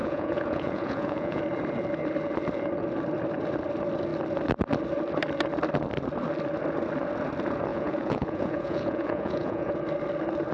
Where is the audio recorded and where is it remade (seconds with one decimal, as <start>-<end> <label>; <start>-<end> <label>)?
0.0-1.4 remade; 1.4-7.7 recorded; 7.7-9.7 remade; 9.7-10.5 recorded